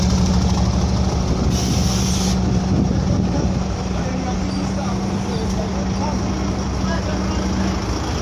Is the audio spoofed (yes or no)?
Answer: no